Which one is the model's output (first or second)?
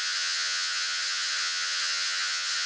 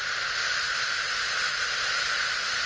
first